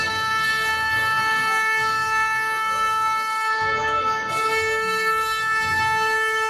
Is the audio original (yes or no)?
no